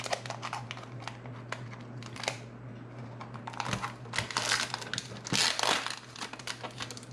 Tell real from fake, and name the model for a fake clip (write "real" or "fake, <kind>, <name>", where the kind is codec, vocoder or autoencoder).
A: real